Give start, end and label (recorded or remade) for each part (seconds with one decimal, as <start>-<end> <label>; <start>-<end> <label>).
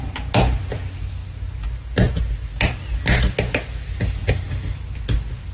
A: 0.0-5.5 recorded